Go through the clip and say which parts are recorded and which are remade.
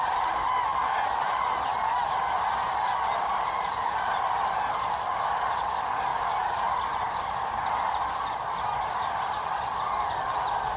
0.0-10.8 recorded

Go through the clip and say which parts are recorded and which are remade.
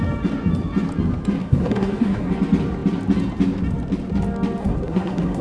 0.0-1.4 recorded; 1.4-2.3 remade; 2.3-4.6 recorded; 4.6-5.4 remade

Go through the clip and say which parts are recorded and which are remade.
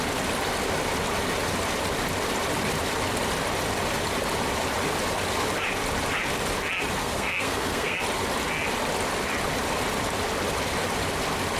0.0-7.0 recorded; 7.0-8.0 remade; 8.0-11.6 recorded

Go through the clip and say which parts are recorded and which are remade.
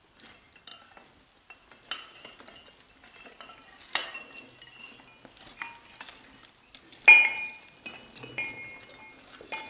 0.0-9.7 recorded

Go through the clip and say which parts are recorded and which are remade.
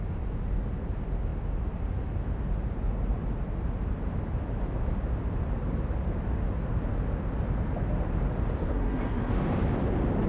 0.0-8.7 recorded; 8.7-9.3 remade; 9.3-10.3 recorded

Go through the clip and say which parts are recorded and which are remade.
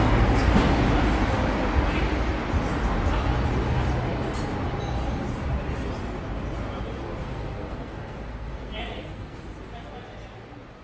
0.0-0.5 remade; 0.5-7.2 recorded; 7.2-9.4 remade; 9.4-10.8 recorded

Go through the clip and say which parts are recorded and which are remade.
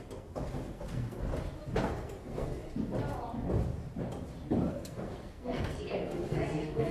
0.0-1.3 remade; 1.3-1.8 recorded; 1.8-2.6 remade; 2.6-4.7 recorded; 4.7-6.9 remade